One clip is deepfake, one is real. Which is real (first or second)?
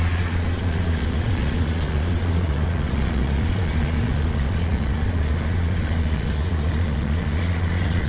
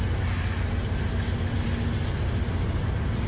second